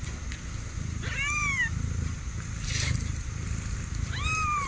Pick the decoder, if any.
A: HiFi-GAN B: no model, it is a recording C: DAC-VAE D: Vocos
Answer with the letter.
B